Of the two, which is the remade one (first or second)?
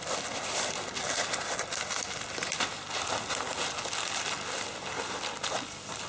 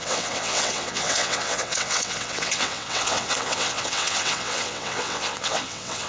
second